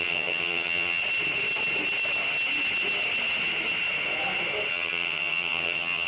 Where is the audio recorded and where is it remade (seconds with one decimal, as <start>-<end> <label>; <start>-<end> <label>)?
0.0-1.0 remade; 1.0-4.7 recorded; 4.7-6.1 remade